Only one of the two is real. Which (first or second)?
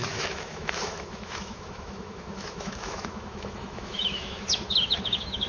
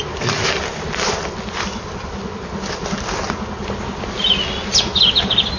second